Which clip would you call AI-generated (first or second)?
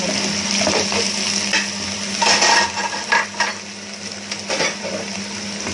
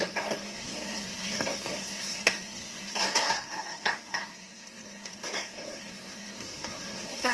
second